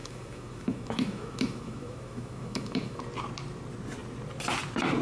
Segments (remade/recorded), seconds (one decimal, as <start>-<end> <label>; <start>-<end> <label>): 0.0-3.0 remade; 3.0-5.0 recorded